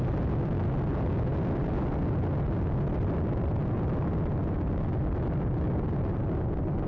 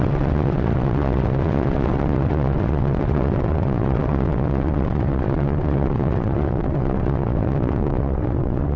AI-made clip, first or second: second